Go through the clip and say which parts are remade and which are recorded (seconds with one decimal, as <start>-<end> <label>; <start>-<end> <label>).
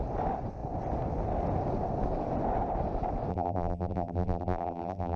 0.0-3.3 recorded; 3.3-5.2 remade